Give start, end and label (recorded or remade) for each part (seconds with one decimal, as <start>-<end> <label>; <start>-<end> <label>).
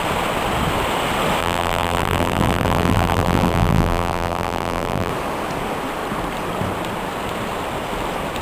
0.0-1.4 recorded; 1.4-5.1 remade; 5.1-8.4 recorded